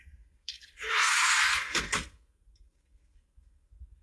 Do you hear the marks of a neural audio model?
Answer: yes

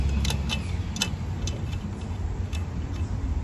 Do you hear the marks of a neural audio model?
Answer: no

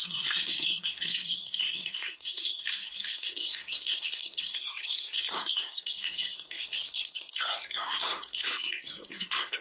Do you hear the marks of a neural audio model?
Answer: yes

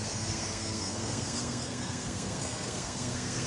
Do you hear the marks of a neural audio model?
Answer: yes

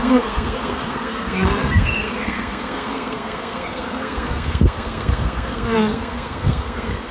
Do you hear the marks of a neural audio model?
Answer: yes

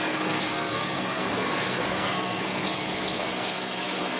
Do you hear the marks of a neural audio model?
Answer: yes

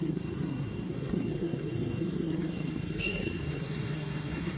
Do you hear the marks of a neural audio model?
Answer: yes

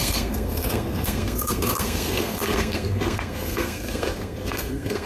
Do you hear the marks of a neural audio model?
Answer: yes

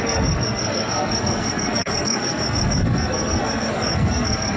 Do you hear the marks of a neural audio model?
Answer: yes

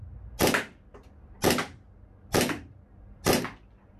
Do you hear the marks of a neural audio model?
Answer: no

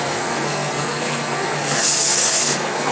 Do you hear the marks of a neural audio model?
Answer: yes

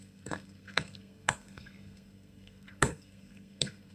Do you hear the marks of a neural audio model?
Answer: yes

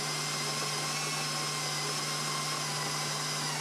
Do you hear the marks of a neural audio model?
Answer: no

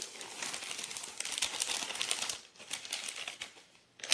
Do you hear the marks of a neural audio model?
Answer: no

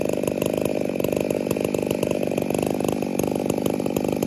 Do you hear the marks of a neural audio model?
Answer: no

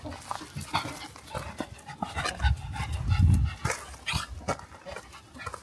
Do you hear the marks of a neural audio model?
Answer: no